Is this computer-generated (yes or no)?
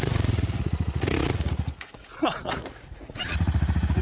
yes